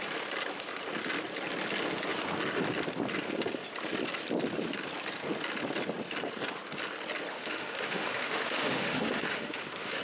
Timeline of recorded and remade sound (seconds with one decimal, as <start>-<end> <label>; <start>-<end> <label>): 0.0-7.3 recorded; 7.3-10.0 remade